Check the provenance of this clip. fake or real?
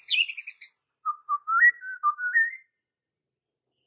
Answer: real